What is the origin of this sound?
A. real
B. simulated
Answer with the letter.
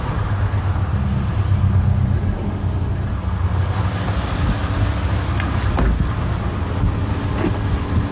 A